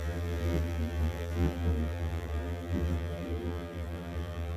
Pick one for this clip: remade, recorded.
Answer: remade